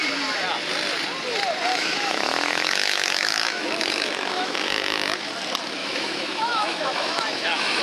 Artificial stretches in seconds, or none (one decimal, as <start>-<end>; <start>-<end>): 1.7-5.3; 5.8-7.8

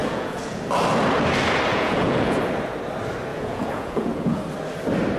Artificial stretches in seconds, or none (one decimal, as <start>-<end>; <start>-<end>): 0.0-0.6; 1.7-2.4; 3.3-4.4

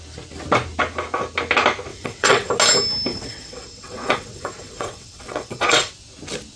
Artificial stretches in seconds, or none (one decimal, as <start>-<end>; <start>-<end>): 1.9-2.5; 3.1-5.9

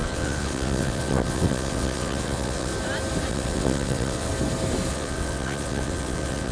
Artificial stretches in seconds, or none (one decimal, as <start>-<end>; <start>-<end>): 0.0-2.7; 3.3-4.3; 4.9-6.5

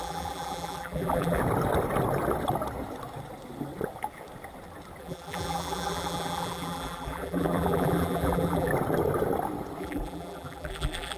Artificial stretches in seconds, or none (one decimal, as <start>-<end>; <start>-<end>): 0.0-1.4; 5.0-8.7; 9.8-11.2

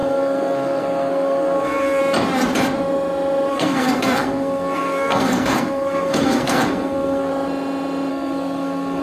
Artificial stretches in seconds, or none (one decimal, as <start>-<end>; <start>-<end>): 0.0-2.0; 3.5-7.3; 8.1-9.0

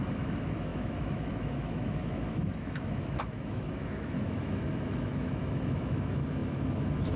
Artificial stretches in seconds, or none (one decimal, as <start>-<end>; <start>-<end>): 0.0-7.2